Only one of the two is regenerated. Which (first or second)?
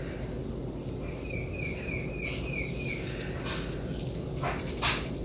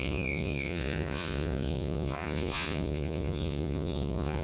second